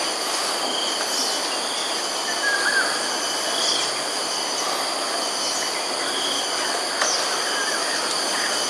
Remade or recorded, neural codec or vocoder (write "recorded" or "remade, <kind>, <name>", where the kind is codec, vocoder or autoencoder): recorded